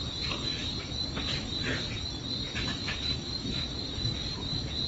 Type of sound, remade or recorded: recorded